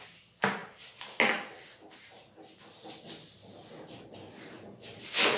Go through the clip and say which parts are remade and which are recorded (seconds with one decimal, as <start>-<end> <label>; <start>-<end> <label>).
0.0-5.4 recorded